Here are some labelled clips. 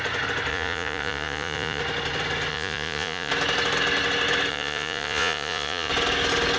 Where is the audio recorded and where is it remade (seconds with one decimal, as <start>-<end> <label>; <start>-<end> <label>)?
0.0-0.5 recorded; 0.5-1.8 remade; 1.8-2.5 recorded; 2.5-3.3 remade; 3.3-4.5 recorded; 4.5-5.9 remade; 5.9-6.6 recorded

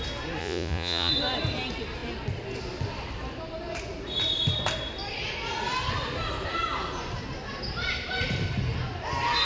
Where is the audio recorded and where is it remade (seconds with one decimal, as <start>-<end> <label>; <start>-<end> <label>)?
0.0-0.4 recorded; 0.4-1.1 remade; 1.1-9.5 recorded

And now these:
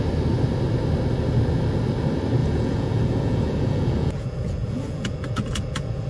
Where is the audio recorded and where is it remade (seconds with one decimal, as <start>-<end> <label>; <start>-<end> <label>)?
0.0-2.4 recorded; 2.4-6.1 remade